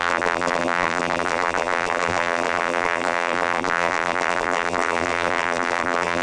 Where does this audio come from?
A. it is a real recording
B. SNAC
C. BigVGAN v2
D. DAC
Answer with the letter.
C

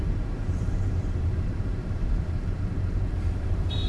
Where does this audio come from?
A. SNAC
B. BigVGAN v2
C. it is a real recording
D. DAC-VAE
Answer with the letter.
B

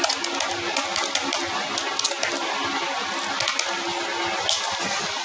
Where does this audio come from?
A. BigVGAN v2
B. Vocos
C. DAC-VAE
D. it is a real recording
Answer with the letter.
D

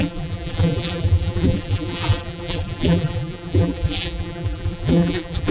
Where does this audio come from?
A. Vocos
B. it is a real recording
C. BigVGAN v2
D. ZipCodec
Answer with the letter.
C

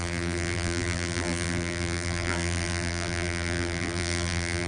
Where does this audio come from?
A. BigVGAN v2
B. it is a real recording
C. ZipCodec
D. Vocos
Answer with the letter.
A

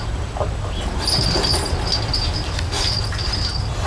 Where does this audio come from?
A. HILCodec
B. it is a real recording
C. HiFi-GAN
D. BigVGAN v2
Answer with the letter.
B